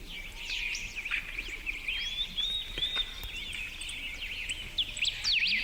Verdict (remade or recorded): recorded